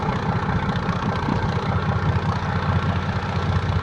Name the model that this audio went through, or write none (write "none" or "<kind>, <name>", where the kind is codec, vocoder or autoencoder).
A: none